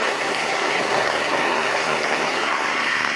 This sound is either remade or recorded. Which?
remade